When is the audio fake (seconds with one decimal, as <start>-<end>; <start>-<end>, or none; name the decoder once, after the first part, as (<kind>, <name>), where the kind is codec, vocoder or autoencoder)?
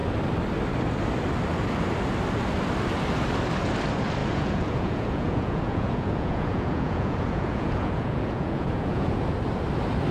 4.2-9.2 (vocoder, Vocos)